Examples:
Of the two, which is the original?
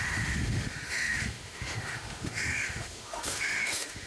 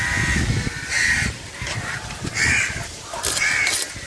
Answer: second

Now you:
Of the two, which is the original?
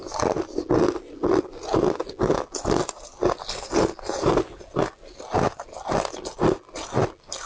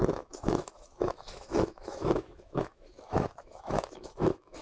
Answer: first